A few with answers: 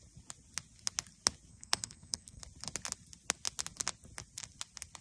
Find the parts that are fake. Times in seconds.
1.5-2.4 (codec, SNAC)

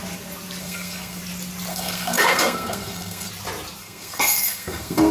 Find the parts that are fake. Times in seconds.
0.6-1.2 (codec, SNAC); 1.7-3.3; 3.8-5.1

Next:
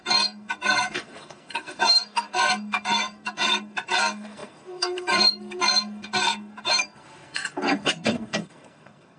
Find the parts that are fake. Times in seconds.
0.0-9.2 (codec, SNAC)

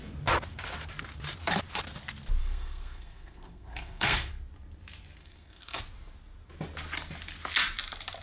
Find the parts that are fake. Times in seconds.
2.4-4.3 (codec, SNAC); 5.2-5.8

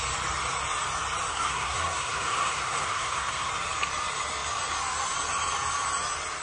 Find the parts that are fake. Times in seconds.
1.3-3.5 (codec, SNAC)